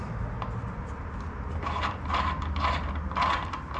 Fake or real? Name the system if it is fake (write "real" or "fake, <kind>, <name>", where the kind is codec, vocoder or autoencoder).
real